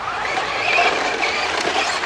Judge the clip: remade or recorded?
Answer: recorded